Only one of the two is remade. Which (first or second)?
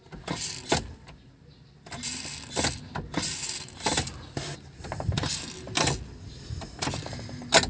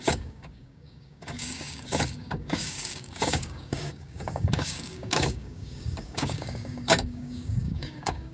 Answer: second